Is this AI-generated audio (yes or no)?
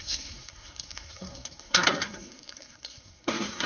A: yes